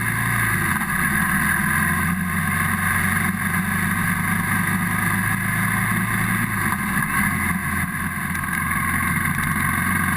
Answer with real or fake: real